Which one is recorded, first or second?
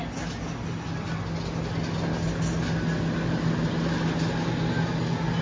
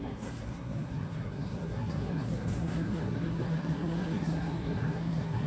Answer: first